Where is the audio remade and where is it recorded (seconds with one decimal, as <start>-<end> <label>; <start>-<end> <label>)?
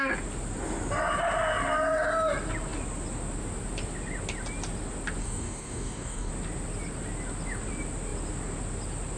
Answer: 0.0-5.2 recorded; 5.2-6.3 remade; 6.3-9.2 recorded